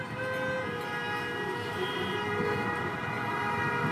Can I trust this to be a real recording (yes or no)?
yes